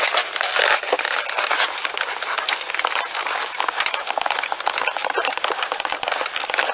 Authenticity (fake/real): real